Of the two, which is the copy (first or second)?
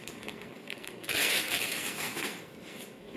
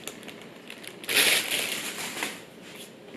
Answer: first